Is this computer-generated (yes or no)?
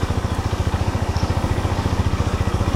yes